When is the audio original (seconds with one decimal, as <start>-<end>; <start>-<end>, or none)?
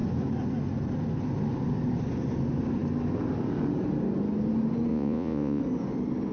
0.0-4.9; 5.6-6.3